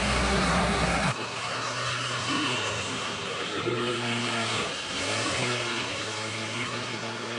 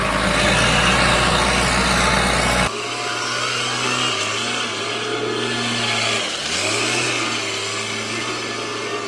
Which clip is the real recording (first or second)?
second